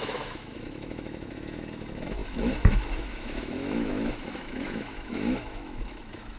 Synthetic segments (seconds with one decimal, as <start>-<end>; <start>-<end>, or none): 0.0-6.4

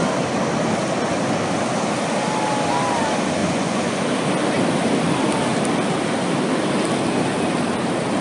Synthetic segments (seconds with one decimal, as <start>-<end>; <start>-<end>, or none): 3.4-4.0

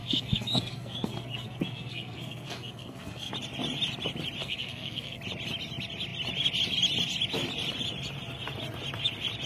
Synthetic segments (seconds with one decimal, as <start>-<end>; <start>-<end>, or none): 0.0-3.3; 4.4-5.2

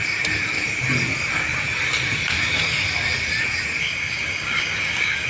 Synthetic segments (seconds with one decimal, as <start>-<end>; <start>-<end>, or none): 3.8-5.3

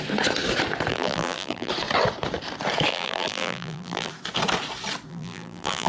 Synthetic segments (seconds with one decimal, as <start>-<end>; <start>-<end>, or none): 0.9-1.7; 2.9-4.1; 5.1-5.9

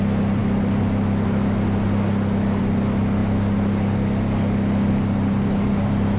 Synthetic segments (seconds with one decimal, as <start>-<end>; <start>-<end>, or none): none